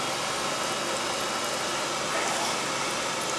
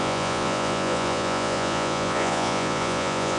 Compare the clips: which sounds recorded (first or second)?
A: first